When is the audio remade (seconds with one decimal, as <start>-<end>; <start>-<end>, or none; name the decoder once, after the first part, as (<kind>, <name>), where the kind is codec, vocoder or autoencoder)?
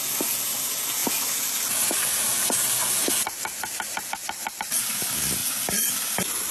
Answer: none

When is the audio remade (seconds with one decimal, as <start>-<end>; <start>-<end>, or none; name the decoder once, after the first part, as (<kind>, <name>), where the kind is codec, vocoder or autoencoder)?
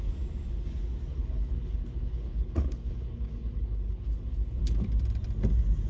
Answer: 1.1-4.6 (codec, HILCodec)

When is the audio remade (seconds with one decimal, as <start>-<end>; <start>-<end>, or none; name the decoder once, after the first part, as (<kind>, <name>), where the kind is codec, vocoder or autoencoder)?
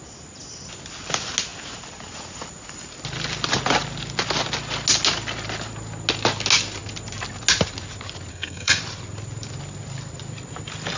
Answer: 8.3-8.8 (codec, SNAC)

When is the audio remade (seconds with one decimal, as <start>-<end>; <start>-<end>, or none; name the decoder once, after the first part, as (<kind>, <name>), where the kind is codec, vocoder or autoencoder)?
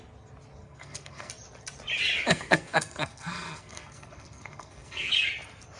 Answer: 0.6-1.3 (codec, SNAC); 2.3-5.1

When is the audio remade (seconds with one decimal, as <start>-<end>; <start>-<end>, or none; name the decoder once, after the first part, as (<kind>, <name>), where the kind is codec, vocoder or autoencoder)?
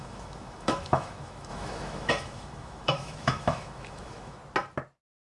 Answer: 0.0-4.4 (autoencoder, DAC-VAE)